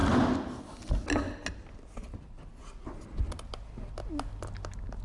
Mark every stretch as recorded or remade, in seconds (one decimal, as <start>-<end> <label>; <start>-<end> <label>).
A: 0.0-5.0 recorded